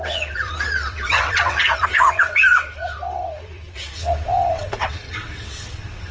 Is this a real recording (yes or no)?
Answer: no